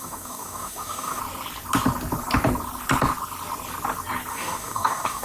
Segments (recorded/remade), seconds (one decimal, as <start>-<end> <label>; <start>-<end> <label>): 0.0-1.2 remade; 1.2-4.3 recorded; 4.3-5.2 remade